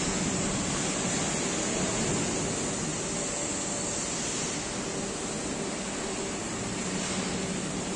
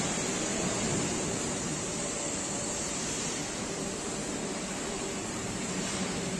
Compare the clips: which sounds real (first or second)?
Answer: first